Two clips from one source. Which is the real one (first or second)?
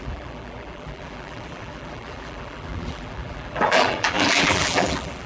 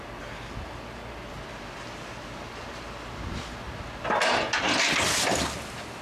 second